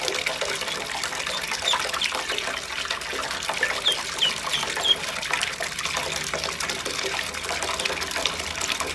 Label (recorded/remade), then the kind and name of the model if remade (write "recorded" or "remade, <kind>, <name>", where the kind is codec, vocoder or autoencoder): recorded